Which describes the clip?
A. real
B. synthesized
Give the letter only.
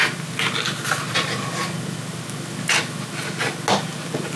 A